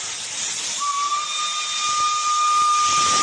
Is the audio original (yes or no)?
yes